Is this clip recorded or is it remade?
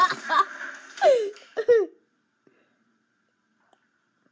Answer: recorded